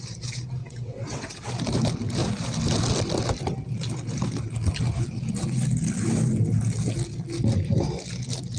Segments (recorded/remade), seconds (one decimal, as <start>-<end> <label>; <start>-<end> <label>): 0.0-0.6 recorded; 0.6-1.5 remade; 1.5-8.6 recorded